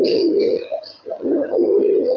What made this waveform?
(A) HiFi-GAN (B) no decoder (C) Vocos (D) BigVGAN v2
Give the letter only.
A